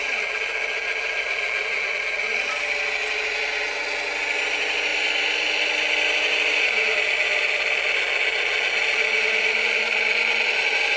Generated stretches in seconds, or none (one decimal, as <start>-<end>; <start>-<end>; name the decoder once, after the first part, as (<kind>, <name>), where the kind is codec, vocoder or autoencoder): none